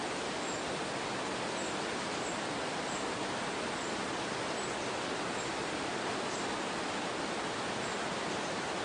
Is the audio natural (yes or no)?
yes